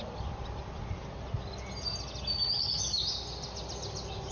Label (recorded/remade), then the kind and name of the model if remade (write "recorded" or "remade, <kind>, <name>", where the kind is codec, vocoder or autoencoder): recorded